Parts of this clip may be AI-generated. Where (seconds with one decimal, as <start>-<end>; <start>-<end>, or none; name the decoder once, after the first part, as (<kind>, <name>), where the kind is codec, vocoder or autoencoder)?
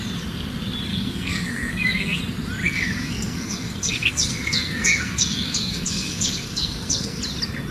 0.9-2.2 (codec, SNAC); 2.6-7.2